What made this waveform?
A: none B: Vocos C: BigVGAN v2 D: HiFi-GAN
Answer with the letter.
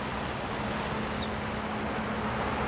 A